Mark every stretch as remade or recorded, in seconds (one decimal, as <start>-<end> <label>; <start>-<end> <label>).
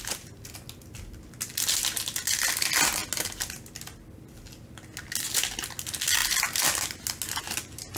0.0-8.0 recorded